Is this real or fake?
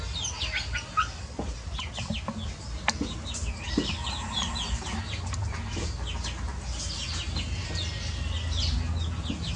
real